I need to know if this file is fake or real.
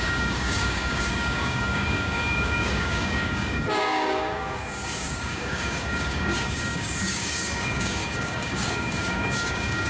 fake